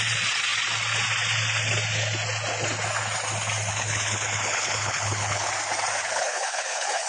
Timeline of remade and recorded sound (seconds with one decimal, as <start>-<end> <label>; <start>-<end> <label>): 0.0-3.7 recorded; 3.7-5.5 remade; 5.5-6.0 recorded; 6.0-7.1 remade